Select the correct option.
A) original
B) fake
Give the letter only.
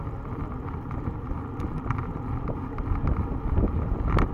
A